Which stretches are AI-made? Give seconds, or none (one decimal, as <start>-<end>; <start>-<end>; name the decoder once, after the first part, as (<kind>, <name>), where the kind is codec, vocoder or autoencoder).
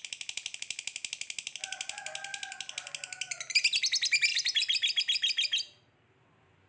none